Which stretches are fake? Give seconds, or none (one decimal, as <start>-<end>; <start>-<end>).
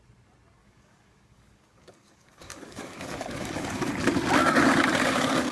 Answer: 0.6-3.9; 4.4-5.5